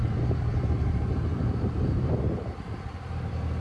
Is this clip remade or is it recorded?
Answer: remade